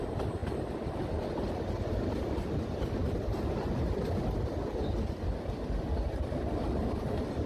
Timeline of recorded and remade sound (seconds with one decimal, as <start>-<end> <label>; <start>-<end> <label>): 0.0-7.5 recorded